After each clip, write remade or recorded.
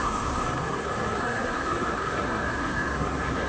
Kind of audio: remade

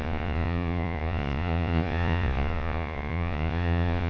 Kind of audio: remade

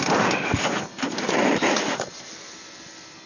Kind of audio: recorded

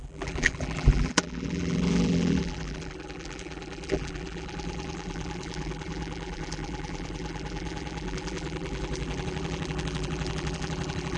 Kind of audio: remade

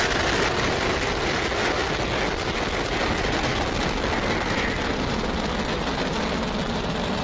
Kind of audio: recorded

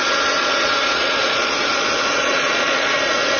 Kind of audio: remade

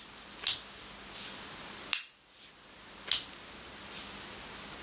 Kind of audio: recorded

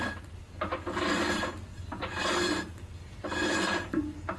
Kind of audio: recorded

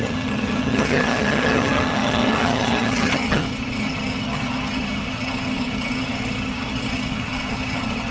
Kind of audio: remade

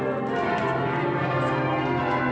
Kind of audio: recorded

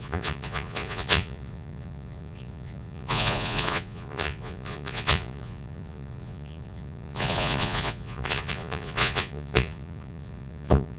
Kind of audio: remade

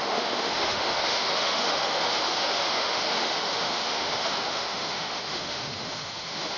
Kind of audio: remade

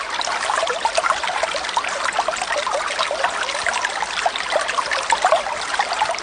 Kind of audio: recorded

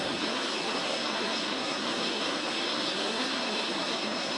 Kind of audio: remade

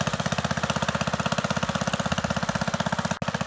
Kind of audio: recorded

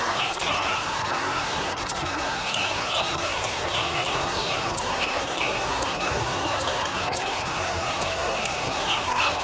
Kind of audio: remade